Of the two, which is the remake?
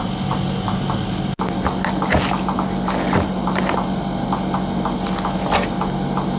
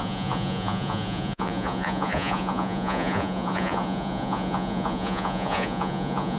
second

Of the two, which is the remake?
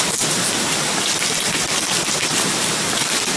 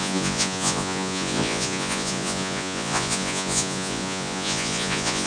second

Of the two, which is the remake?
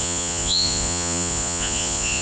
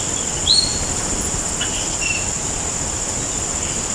first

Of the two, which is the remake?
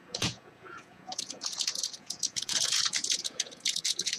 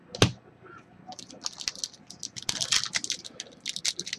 first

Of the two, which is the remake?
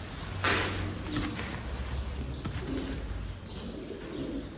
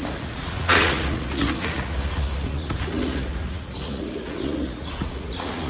second